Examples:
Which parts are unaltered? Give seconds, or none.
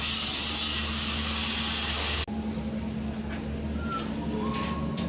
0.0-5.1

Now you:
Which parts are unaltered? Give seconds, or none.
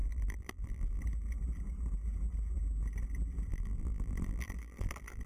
1.0-3.5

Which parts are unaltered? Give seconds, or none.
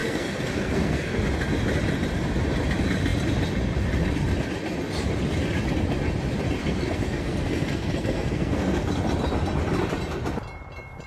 1.2-6.6; 8.9-11.1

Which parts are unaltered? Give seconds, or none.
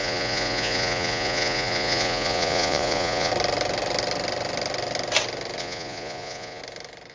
3.3-5.6; 6.6-7.1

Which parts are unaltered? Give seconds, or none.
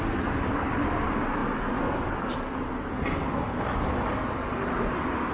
0.0-5.3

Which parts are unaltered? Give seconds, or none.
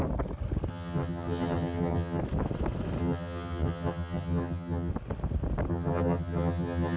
0.0-0.7; 2.2-3.0; 4.9-5.7